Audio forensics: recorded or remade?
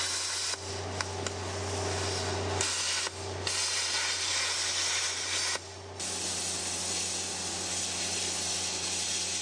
recorded